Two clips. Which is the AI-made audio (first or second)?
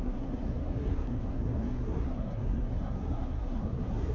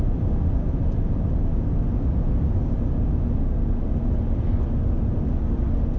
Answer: first